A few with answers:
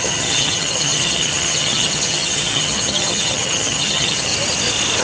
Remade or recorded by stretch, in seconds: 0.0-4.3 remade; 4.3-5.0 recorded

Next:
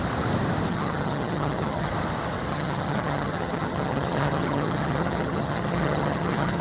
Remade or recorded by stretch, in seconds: 0.0-0.7 recorded; 0.7-1.9 remade; 1.9-2.5 recorded; 2.5-6.6 remade